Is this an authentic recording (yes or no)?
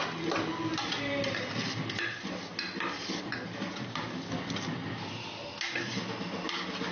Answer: yes